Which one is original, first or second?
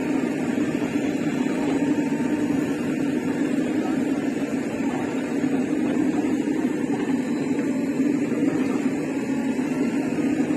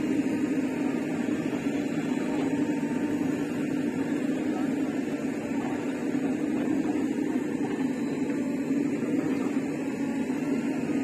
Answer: second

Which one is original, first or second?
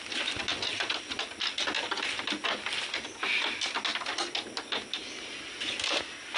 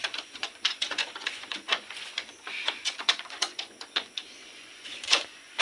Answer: first